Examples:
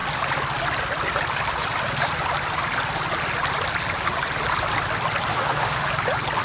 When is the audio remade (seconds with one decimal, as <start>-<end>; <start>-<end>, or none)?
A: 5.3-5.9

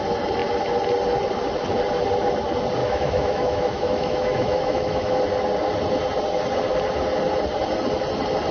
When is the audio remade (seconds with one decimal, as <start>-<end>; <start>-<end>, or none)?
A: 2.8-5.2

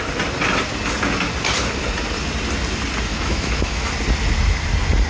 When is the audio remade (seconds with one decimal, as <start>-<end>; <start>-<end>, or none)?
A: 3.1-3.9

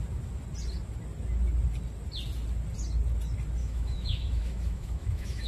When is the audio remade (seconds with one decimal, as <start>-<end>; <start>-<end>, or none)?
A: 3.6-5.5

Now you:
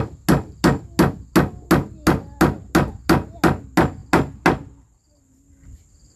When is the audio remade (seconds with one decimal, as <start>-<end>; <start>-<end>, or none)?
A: none

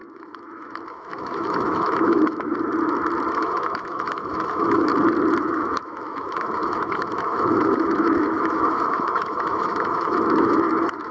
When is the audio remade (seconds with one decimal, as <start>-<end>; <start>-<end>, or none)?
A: 0.0-2.5; 3.3-4.9; 5.4-11.1

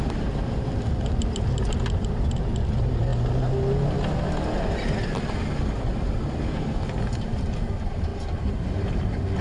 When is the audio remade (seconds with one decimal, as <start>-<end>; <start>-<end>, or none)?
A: none

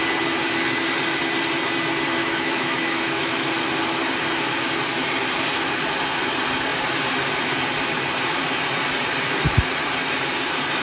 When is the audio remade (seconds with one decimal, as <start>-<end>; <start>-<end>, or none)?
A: 2.2-3.5